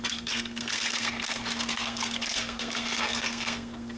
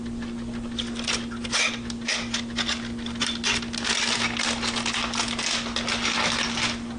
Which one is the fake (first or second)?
first